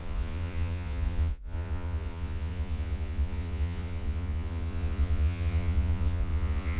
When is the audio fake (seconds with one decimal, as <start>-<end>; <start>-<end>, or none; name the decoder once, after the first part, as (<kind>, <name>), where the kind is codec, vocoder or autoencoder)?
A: 0.0-6.8 (vocoder, Vocos)